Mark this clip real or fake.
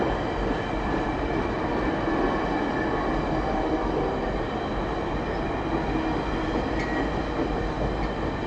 real